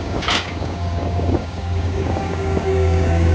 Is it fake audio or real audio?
fake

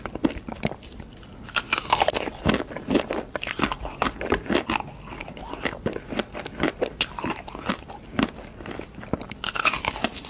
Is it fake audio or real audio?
real